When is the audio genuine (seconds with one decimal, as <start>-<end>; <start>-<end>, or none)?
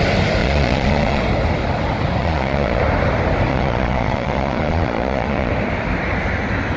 0.0-0.4; 1.2-2.2; 2.8-3.5; 5.5-6.8